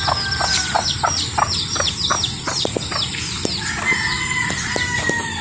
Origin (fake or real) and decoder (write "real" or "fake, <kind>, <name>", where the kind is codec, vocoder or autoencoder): real